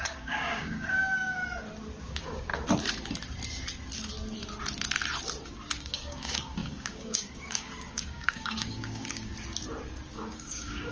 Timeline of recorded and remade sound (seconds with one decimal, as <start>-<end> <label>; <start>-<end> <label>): 0.0-1.4 remade; 1.4-2.0 recorded; 2.0-2.5 remade; 2.5-5.8 recorded; 5.8-9.3 remade; 9.3-10.1 recorded; 10.1-10.9 remade